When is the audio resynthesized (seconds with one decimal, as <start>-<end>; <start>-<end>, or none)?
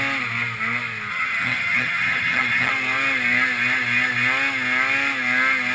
1.1-2.7